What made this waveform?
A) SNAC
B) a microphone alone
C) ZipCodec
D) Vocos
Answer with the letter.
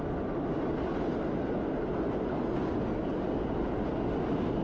B